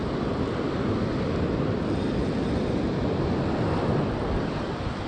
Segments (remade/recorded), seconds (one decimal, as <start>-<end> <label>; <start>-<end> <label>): 0.0-5.1 recorded